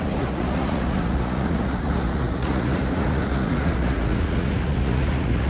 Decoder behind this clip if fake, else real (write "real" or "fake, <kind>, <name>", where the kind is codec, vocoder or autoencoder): fake, vocoder, Vocos